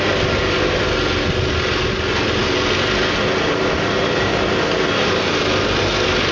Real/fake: real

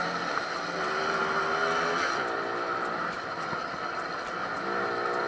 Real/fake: real